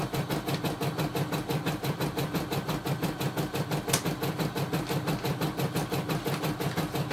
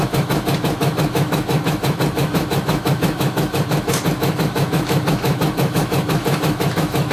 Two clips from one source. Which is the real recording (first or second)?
first